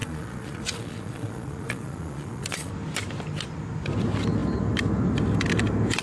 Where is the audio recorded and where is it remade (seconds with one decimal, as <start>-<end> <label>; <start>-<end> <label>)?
0.0-2.7 remade; 2.7-6.0 recorded